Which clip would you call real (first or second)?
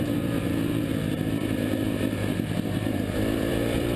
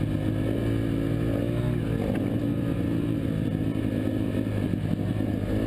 second